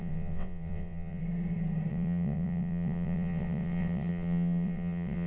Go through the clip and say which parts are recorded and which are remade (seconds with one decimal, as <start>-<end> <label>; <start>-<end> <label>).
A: 0.0-1.2 remade; 1.2-1.9 recorded; 1.9-5.3 remade